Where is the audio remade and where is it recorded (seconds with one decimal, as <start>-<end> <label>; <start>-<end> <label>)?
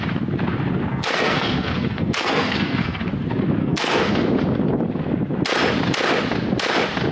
0.0-0.9 recorded; 0.9-3.0 remade; 3.0-3.6 recorded; 3.6-4.2 remade; 4.2-7.1 recorded